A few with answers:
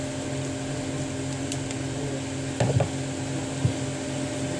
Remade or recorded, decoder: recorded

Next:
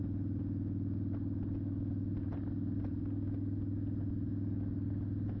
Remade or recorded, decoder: recorded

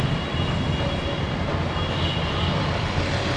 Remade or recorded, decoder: recorded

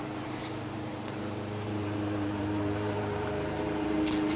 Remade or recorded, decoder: remade, vocoder, BigVGAN v2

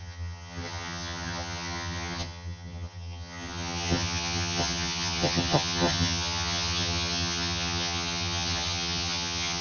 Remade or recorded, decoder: remade, vocoder, HiFi-GAN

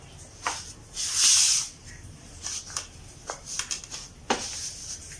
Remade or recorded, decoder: recorded